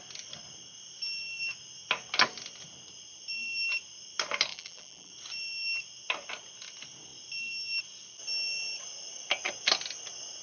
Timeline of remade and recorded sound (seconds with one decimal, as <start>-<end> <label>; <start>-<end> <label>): 0.0-4.5 recorded; 4.5-5.1 remade; 5.1-10.4 recorded